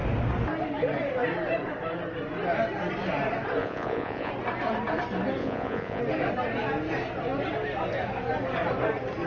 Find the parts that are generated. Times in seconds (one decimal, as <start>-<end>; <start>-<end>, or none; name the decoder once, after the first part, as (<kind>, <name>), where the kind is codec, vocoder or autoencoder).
3.6-4.3 (vocoder, Vocos); 5.4-6.0

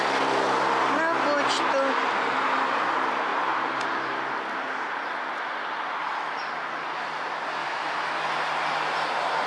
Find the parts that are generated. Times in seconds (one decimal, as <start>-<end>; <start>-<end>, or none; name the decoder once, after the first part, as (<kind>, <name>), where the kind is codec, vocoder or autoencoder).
7.6-8.1 (autoencoder, DAC-VAE)